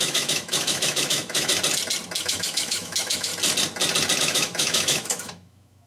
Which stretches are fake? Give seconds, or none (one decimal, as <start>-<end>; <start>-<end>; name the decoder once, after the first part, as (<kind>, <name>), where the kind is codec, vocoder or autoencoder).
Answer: 0.0-1.5 (autoencoder, DAC-VAE); 2.2-3.3; 4.2-5.9